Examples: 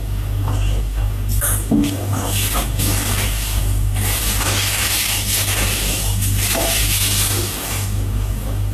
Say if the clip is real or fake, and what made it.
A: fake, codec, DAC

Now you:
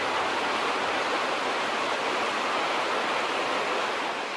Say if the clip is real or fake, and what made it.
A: real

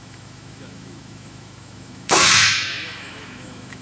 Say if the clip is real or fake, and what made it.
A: fake, autoencoder, DAC-VAE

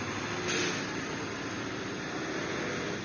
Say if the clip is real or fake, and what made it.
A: real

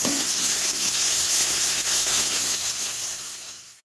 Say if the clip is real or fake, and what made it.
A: fake, codec, SNAC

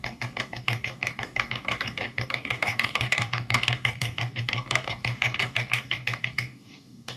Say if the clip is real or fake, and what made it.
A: fake, codec, DAC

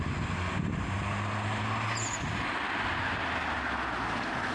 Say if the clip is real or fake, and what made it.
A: real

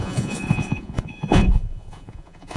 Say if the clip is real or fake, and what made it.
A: fake, vocoder, Vocos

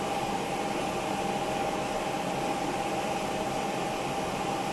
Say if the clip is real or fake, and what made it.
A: real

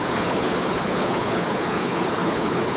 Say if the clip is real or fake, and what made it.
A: fake, codec, HILCodec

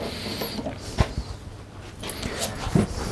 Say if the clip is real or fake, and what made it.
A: real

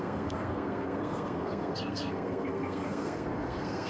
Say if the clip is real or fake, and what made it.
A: fake, codec, SNAC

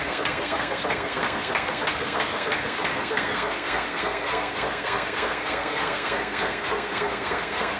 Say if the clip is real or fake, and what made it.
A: fake, codec, SNAC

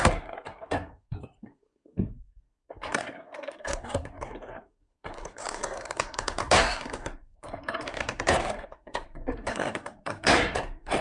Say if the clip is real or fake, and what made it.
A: fake, codec, SNAC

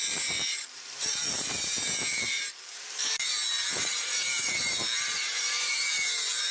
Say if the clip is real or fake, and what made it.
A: fake, vocoder, BigVGAN v2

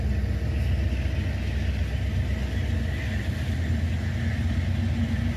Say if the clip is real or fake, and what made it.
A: real